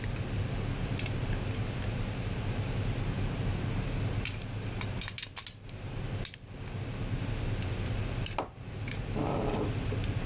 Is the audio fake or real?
real